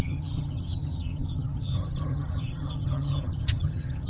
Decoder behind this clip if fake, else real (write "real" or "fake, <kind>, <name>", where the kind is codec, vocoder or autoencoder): fake, vocoder, HiFi-GAN